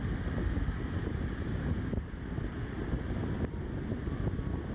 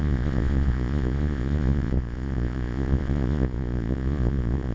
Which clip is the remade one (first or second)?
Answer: second